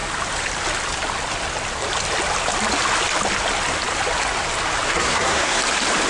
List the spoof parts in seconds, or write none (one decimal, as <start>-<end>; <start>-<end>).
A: 4.9-5.6